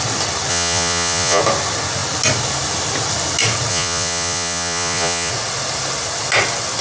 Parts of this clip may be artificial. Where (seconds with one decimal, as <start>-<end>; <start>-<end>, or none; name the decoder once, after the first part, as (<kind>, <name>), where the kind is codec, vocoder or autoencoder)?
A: 0.5-1.4 (vocoder, Vocos); 3.7-5.3